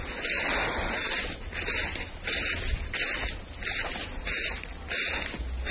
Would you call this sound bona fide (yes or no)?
yes